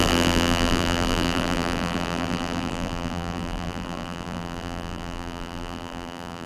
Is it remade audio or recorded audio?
remade